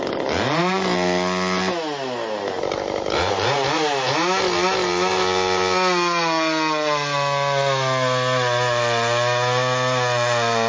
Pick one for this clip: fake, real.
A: real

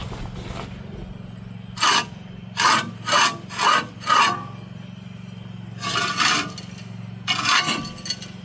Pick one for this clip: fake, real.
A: real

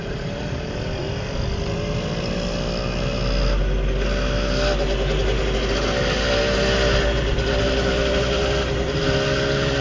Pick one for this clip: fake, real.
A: real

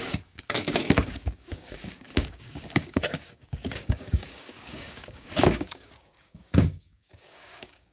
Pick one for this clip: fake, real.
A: fake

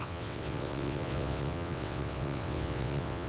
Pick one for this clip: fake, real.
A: fake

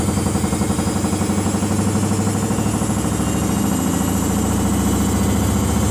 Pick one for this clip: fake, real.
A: real